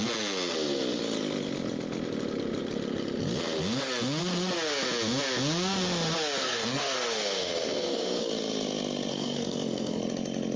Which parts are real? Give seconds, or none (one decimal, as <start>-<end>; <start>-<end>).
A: 0.0-6.4; 8.3-9.1; 10.0-10.6